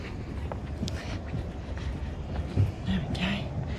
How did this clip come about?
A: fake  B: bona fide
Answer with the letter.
A